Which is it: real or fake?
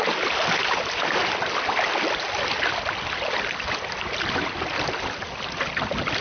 real